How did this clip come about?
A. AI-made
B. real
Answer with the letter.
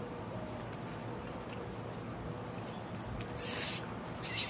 B